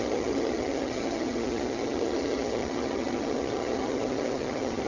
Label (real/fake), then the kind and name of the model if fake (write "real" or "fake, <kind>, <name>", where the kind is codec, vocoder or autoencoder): fake, vocoder, HiFi-GAN